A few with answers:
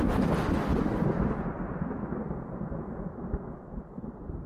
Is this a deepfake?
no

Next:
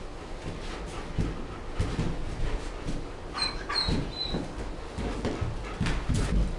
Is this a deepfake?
no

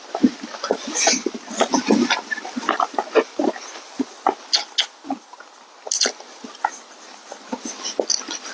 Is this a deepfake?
no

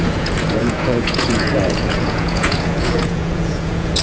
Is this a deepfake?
yes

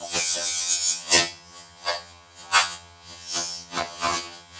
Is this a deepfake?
yes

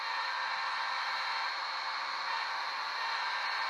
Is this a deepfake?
no